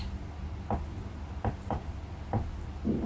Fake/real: real